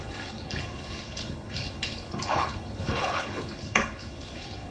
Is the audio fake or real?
fake